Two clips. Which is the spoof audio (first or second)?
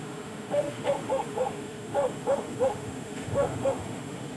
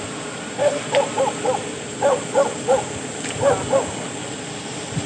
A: first